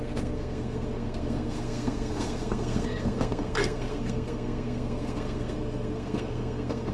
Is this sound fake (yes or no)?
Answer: yes